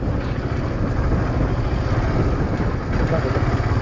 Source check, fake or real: real